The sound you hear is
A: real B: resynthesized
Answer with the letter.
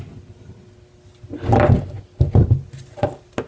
A